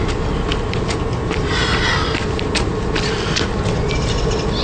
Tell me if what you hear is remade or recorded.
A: recorded